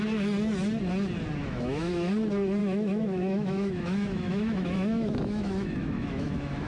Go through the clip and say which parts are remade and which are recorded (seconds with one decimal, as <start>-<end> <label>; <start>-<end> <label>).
0.0-1.4 recorded; 1.4-2.1 remade; 2.1-2.6 recorded; 2.6-6.7 remade